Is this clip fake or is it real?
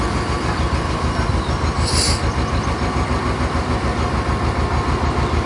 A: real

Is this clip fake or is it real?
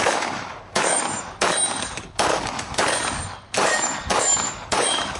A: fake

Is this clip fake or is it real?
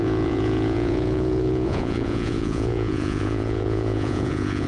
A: fake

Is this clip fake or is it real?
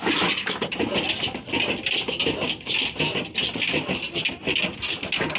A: real